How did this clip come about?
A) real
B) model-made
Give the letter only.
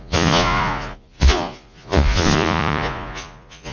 B